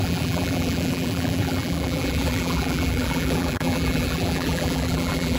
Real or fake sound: fake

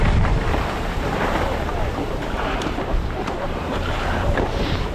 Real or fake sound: fake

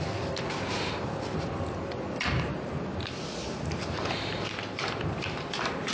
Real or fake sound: real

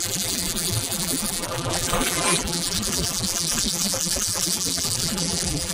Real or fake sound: fake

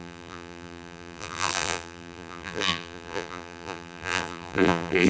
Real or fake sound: fake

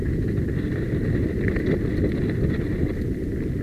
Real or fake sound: real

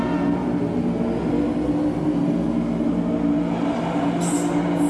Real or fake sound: real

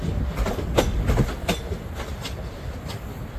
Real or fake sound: real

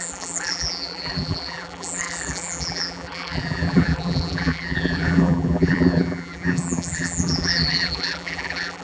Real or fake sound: fake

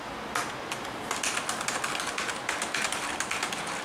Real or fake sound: real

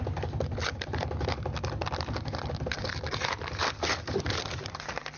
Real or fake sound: fake